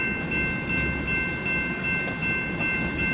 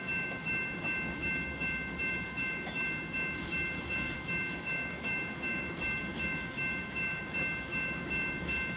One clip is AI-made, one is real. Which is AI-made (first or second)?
second